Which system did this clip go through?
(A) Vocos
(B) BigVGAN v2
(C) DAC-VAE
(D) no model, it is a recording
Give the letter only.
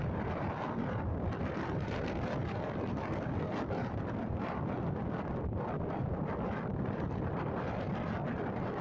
B